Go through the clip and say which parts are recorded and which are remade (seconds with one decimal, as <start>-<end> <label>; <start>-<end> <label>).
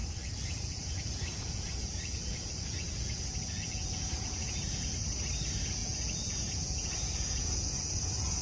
0.0-5.0 remade; 5.0-5.8 recorded; 5.8-8.4 remade